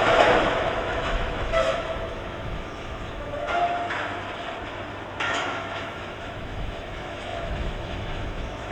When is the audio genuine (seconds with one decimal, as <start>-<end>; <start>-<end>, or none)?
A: 3.6-5.2